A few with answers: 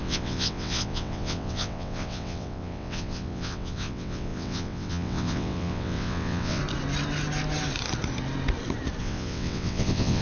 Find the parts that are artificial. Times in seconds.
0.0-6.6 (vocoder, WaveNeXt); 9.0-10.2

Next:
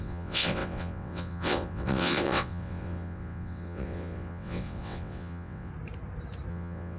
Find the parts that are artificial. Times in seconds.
0.0-5.7 (vocoder, WaveNeXt); 6.5-7.0

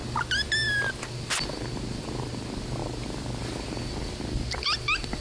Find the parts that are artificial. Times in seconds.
none

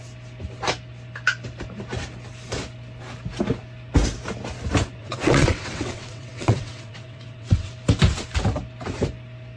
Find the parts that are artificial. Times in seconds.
5.0-7.7 (vocoder, WaveNeXt)

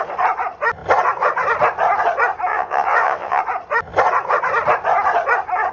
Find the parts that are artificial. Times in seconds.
2.5-3.4 (vocoder, WaveNeXt)